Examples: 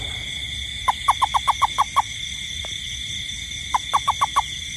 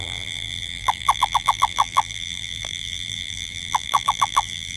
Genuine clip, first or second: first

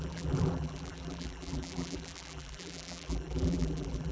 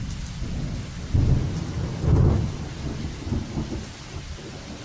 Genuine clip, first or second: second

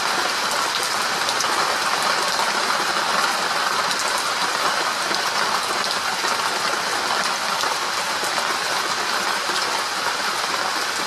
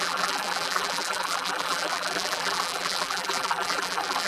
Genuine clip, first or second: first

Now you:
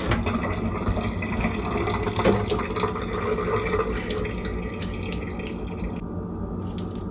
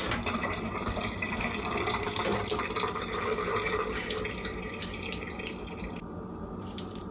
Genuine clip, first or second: first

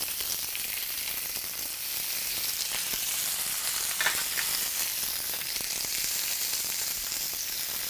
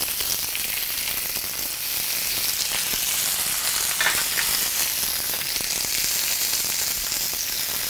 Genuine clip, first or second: second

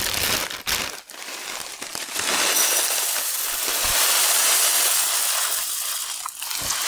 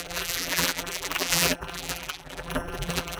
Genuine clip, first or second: first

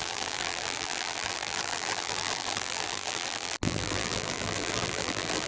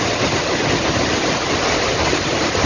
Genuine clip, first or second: second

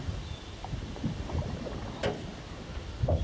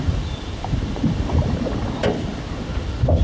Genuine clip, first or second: first